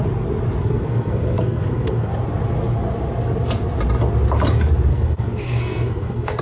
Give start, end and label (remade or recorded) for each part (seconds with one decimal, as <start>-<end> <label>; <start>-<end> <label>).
0.0-0.6 recorded; 0.6-2.1 remade; 2.1-4.9 recorded; 4.9-6.4 remade